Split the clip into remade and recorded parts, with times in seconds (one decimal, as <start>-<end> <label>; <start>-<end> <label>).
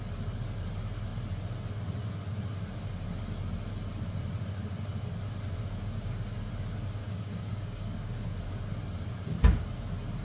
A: 0.0-7.0 recorded; 7.0-8.5 remade; 8.5-10.2 recorded